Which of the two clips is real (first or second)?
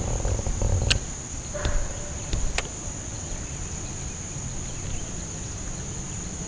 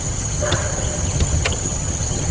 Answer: first